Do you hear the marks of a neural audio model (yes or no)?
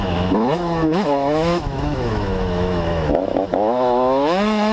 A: yes